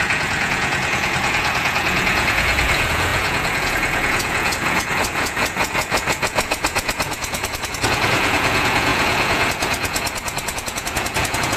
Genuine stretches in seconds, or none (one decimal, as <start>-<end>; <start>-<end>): none